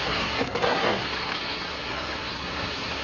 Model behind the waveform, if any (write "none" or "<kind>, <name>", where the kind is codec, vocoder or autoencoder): codec, SNAC